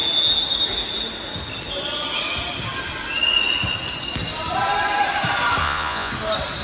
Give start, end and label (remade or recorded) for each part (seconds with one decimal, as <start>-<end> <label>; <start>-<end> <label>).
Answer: 0.0-5.6 recorded; 5.6-6.1 remade; 6.1-6.6 recorded